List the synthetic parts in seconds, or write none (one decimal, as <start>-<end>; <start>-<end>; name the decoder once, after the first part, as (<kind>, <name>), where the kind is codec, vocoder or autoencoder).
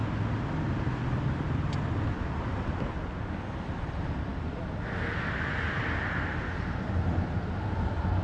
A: 3.4-8.2 (vocoder, BigVGAN v2)